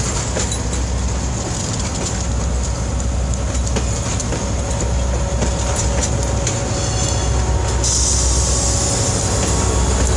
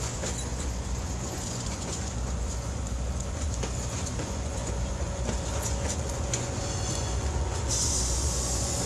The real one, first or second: first